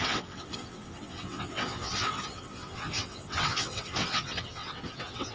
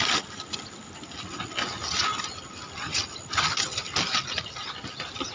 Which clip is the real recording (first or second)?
second